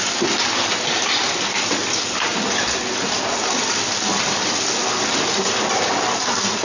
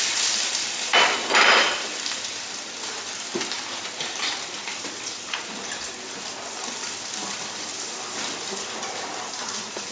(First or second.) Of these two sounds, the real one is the first